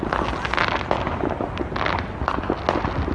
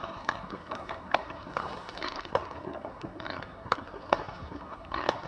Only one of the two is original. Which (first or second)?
first